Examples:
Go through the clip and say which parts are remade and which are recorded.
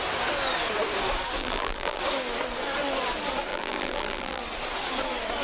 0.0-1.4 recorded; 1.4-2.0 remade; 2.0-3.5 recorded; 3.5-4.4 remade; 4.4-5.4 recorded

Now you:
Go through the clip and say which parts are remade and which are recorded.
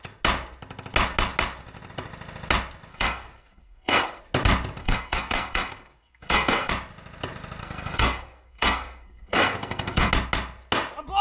0.0-2.9 recorded; 2.9-4.2 remade; 4.2-4.8 recorded; 4.8-6.7 remade; 6.7-7.6 recorded; 7.6-10.1 remade; 10.1-11.2 recorded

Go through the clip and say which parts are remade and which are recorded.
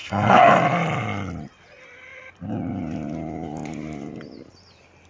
0.0-0.5 remade; 0.5-5.1 recorded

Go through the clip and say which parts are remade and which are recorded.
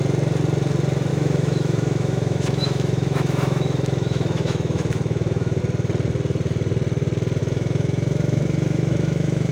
0.0-1.1 recorded; 1.1-5.6 remade; 5.6-7.4 recorded; 7.4-9.5 remade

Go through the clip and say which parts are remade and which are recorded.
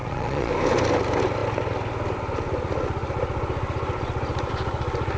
0.0-0.5 remade; 0.5-5.2 recorded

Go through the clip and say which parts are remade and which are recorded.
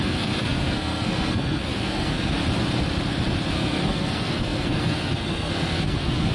0.0-2.4 remade; 2.4-3.5 recorded; 3.5-6.3 remade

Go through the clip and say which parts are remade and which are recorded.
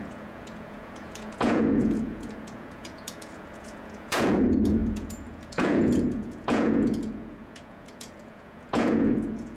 0.0-9.6 remade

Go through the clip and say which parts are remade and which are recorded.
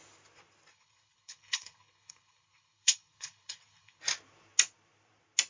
0.0-0.7 recorded; 0.7-4.0 remade; 4.0-5.5 recorded